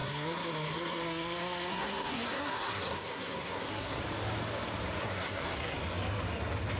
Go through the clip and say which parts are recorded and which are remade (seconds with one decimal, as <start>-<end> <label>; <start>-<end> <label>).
0.0-4.0 remade; 4.0-5.0 recorded; 5.0-5.8 remade; 5.8-6.8 recorded